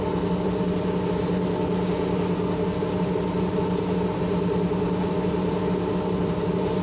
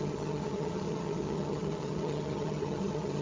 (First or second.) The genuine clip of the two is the first